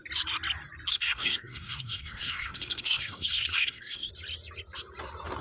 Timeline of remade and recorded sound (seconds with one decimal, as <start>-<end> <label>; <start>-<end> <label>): 0.0-0.9 recorded; 0.9-4.1 remade; 4.1-5.4 recorded